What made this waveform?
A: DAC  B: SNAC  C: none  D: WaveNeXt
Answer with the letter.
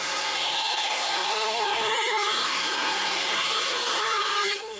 B